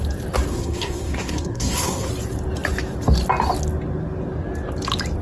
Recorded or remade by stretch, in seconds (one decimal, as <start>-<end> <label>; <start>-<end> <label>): 0.0-0.5 recorded; 0.5-2.1 remade; 2.1-5.2 recorded